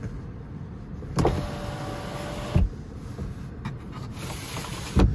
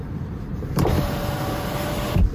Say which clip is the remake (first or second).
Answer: second